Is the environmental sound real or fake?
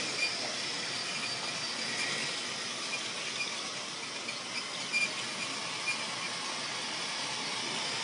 real